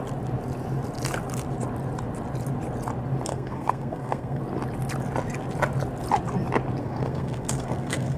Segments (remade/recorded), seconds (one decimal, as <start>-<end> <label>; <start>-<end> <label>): 0.0-3.3 recorded; 3.3-4.4 remade; 4.4-6.8 recorded; 6.8-8.2 remade